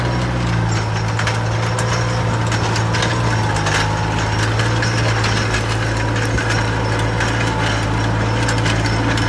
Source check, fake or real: real